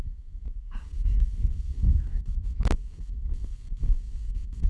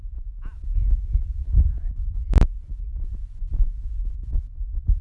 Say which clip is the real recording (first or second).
second